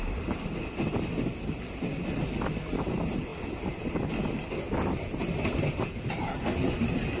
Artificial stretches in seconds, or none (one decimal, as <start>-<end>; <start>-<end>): none